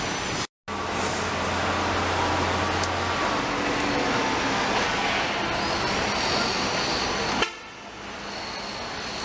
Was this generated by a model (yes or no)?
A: no